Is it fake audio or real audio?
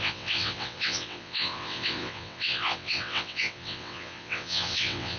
fake